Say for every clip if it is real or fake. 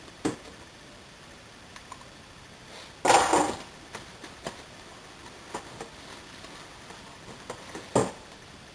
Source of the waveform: real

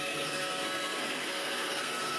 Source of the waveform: fake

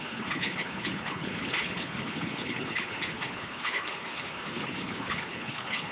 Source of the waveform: fake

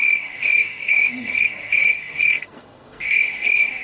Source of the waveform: fake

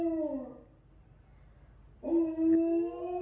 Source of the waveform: real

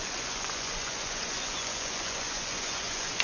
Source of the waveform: fake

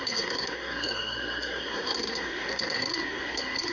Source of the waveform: fake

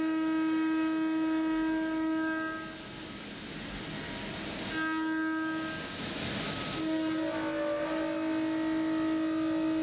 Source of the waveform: real